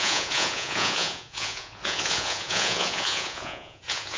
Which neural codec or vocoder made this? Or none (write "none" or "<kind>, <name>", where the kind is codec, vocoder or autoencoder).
vocoder, Vocos